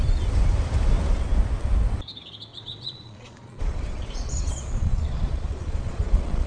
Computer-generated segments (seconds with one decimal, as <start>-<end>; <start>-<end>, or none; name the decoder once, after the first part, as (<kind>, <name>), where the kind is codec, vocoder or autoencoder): 2.5-6.5 (vocoder, Vocos)